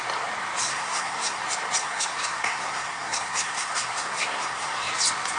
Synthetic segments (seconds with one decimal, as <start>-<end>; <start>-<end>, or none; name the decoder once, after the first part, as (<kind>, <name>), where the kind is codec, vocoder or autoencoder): 0.7-1.4 (codec, SNAC); 1.8-4.9